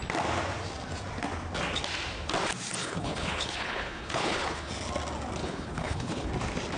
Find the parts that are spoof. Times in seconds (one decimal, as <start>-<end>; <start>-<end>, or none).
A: 2.8-4.7; 5.4-6.3